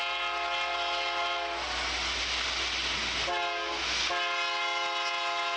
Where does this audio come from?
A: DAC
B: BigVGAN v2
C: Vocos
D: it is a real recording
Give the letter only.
D